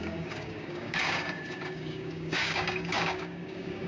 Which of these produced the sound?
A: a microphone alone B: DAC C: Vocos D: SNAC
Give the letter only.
B